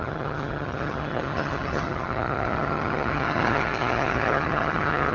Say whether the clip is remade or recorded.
remade